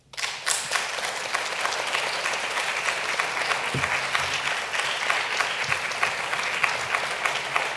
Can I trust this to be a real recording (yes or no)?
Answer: yes